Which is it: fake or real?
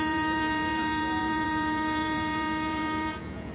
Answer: fake